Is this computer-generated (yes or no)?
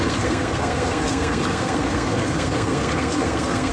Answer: yes